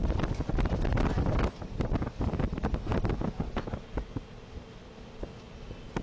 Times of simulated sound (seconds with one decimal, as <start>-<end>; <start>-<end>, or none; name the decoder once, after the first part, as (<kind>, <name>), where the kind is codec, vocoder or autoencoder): none